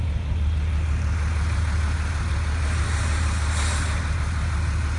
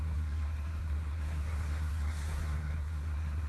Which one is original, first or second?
first